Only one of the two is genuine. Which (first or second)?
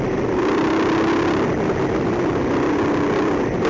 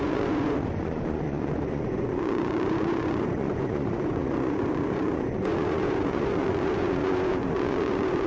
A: first